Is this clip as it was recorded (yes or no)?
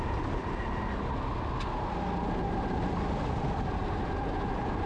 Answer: yes